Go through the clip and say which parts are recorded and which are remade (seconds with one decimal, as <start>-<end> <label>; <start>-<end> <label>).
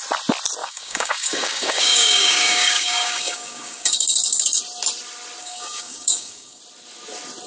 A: 0.0-0.6 recorded; 0.6-4.6 remade; 4.6-5.4 recorded; 5.4-6.6 remade; 6.6-7.5 recorded